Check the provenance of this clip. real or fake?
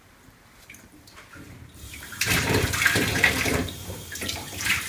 fake